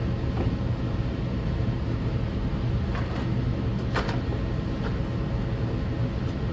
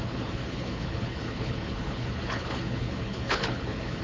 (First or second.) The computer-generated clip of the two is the second